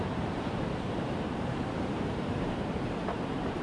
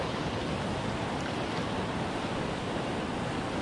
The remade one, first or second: first